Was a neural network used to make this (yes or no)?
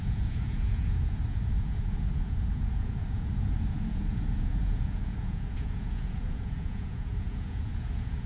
yes